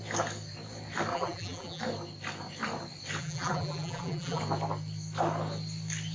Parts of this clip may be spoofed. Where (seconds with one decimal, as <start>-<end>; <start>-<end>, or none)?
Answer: 1.1-1.8; 3.2-4.4